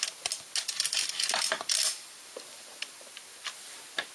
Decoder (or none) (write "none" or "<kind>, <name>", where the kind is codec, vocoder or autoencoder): none